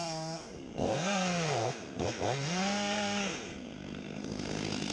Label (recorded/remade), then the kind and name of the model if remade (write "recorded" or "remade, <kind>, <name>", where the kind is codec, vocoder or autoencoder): remade, codec, SNAC